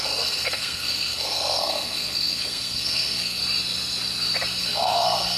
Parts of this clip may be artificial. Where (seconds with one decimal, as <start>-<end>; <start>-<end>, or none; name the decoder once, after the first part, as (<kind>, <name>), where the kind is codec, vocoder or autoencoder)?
0.0-3.4 (codec, SNAC); 4.6-5.4